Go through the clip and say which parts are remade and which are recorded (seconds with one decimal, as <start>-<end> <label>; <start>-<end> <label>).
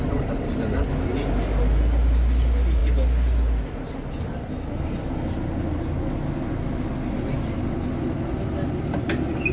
0.0-9.5 recorded